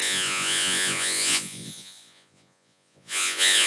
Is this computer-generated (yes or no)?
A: yes